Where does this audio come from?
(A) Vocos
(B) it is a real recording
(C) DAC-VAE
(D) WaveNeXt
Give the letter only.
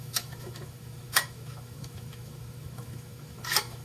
C